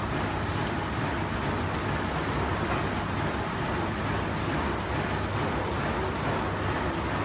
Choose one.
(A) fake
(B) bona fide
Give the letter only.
B